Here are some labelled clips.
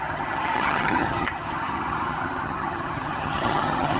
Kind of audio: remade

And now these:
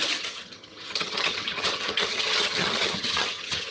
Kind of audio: remade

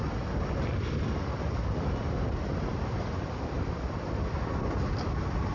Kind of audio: recorded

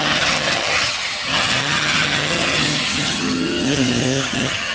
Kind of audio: remade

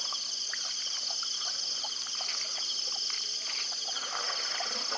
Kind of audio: recorded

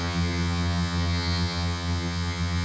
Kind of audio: remade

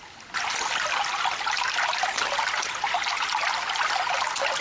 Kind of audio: recorded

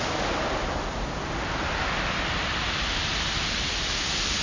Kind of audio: recorded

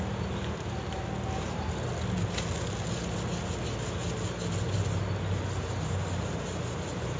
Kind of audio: recorded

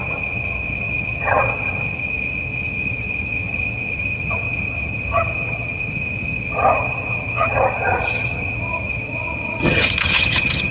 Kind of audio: remade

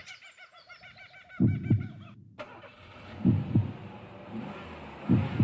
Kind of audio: recorded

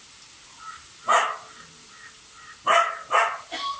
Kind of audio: recorded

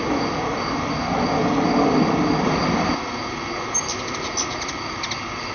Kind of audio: recorded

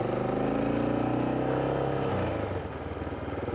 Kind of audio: recorded